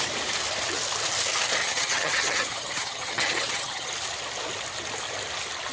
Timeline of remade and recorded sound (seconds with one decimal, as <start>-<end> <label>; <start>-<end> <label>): 0.0-1.6 recorded; 1.6-3.9 remade; 3.9-5.7 recorded